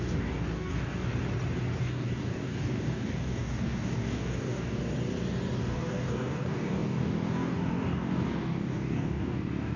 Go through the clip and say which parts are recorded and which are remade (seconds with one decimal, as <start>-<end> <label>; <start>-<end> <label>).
0.0-1.1 remade; 1.1-1.8 recorded; 1.8-4.8 remade; 4.8-5.6 recorded; 5.6-9.8 remade